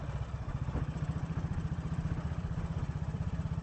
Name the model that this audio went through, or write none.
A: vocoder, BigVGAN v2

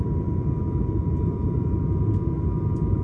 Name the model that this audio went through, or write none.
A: vocoder, BigVGAN v2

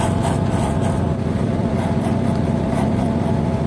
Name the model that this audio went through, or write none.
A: vocoder, BigVGAN v2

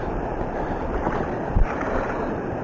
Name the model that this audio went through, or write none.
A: vocoder, BigVGAN v2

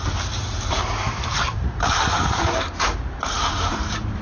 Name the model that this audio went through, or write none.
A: vocoder, BigVGAN v2